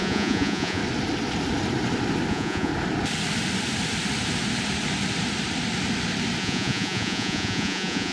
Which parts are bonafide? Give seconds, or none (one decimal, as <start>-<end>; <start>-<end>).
0.8-2.3; 2.7-6.4